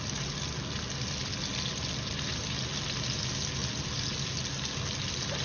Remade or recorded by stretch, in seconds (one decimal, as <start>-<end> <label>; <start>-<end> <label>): 0.0-5.4 recorded